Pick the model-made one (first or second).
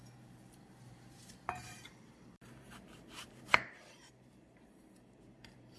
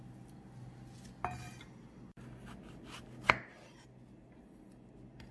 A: first